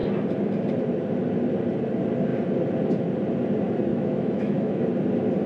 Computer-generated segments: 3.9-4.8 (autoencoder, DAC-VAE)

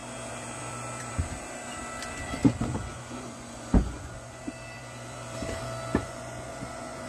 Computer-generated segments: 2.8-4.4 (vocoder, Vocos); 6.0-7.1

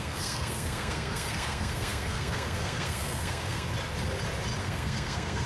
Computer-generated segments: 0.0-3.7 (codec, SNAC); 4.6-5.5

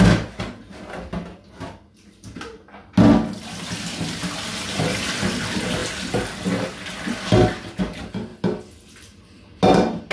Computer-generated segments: none

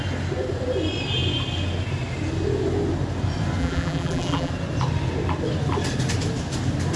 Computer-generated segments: 3.6-4.5 (vocoder, BigVGAN v2)

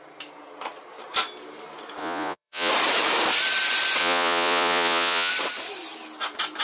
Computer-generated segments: 2.0-2.7 (vocoder, Vocos); 4.0-5.3

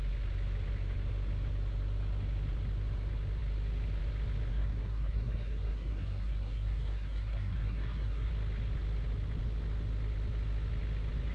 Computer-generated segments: 4.5-8.3 (codec, SNAC)